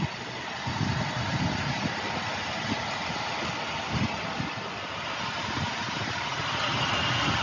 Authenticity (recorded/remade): recorded